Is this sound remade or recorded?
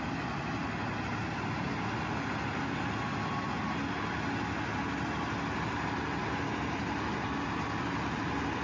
recorded